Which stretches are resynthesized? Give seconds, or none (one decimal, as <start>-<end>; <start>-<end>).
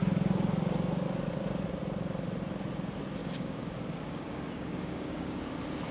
3.2-5.4